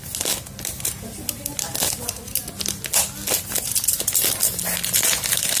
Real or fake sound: real